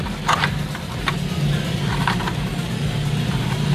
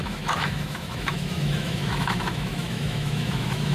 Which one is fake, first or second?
second